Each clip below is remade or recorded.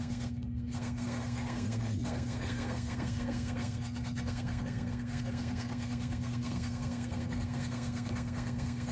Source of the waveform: remade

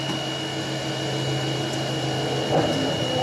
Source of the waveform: recorded